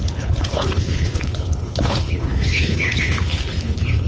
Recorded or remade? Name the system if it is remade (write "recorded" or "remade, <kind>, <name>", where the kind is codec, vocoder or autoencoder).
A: remade, codec, HILCodec